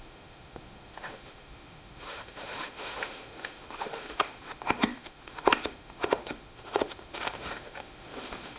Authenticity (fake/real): fake